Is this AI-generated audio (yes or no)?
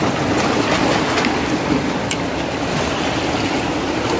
no